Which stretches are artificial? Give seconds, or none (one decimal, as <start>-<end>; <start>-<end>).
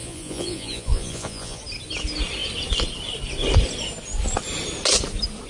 0.0-1.6